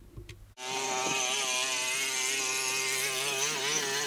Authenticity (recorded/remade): recorded